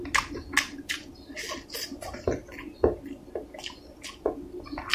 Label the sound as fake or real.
real